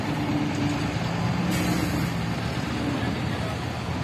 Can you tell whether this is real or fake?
real